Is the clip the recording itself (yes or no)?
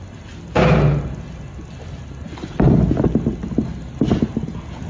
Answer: yes